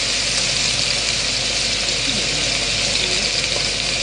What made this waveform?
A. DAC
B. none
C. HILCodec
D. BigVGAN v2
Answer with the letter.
B